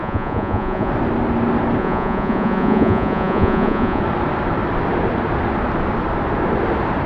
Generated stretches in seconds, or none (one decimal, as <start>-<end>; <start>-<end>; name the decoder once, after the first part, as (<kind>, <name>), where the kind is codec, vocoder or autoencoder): 0.0-0.9 (vocoder, Vocos); 1.8-4.0